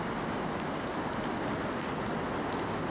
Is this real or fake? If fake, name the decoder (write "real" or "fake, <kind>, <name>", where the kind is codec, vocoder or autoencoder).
real